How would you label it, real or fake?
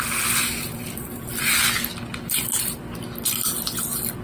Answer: real